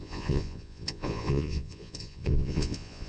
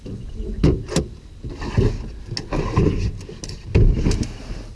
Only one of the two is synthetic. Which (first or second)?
first